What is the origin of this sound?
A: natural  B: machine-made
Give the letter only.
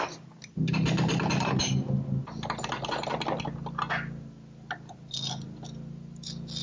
A